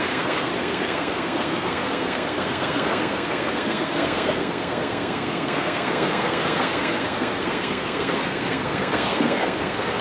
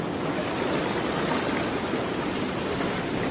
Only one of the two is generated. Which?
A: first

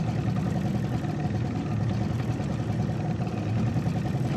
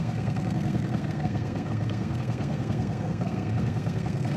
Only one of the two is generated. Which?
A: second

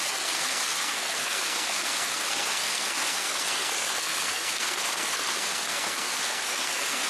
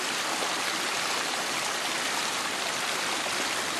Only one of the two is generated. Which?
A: first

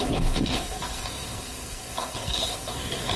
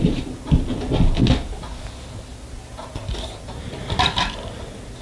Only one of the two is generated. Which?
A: first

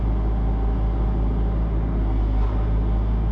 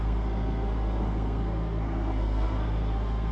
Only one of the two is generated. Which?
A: second